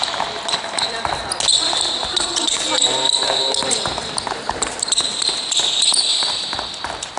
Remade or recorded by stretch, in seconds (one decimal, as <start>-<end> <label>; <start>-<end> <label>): 0.0-7.2 recorded